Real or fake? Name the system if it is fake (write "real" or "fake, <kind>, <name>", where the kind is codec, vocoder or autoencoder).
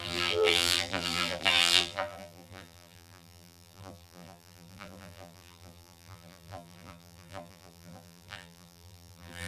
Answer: fake, vocoder, BigVGAN v2